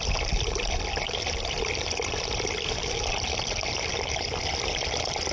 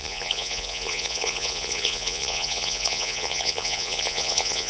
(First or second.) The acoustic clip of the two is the first